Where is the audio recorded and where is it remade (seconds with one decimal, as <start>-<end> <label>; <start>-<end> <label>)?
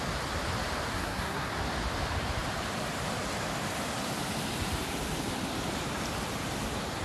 0.0-0.9 recorded; 0.9-1.5 remade; 1.5-7.0 recorded